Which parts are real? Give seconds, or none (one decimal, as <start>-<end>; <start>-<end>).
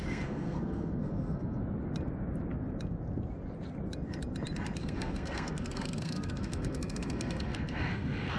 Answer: 1.6-4.8